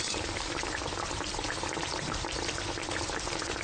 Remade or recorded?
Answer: recorded